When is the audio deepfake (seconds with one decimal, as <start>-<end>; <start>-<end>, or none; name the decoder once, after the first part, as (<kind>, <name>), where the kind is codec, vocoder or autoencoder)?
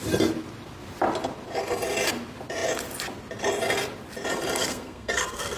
4.6-5.6 (codec, SNAC)